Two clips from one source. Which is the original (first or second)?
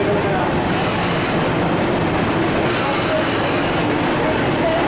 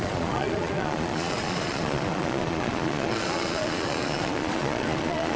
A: first